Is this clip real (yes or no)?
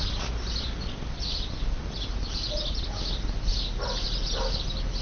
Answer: yes